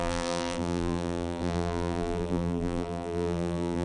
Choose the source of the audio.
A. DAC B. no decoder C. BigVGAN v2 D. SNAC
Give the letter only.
C